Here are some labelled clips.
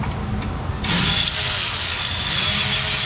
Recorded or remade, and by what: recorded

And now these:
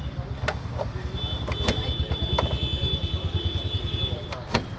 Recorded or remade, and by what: recorded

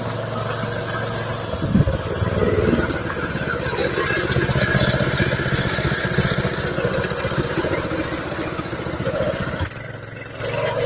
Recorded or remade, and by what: recorded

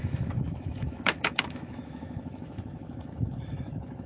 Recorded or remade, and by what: remade, autoencoder, DAC-VAE